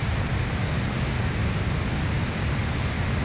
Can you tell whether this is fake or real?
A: real